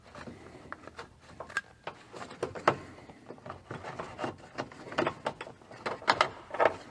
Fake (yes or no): no